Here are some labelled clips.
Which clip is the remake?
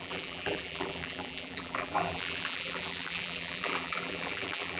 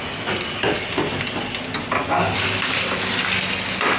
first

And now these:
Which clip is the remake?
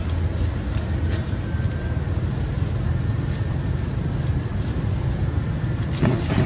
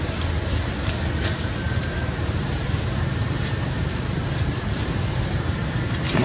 second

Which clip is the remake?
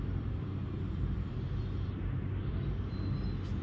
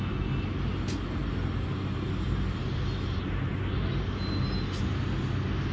first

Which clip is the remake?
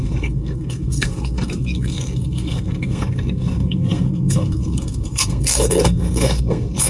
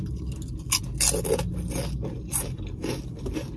first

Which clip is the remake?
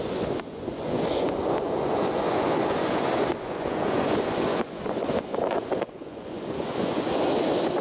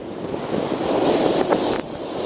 first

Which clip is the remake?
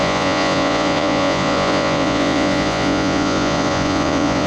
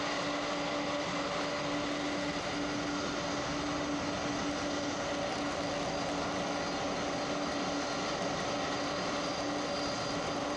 first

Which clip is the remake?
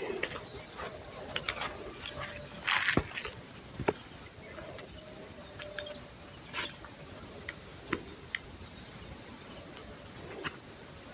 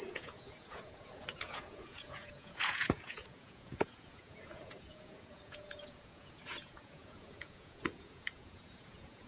second